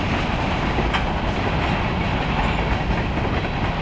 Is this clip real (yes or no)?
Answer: yes